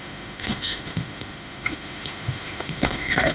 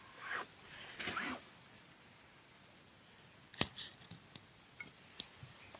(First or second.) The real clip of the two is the second